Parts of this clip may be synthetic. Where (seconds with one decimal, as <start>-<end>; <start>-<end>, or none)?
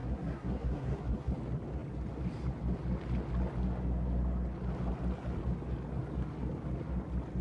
0.0-1.3